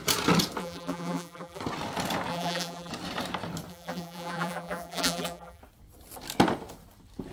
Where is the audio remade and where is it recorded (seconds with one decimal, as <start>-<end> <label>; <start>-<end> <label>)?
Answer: 0.0-0.6 recorded; 0.6-1.6 remade; 1.6-2.3 recorded; 2.3-2.9 remade; 2.9-3.7 recorded; 3.7-5.6 remade; 5.6-7.3 recorded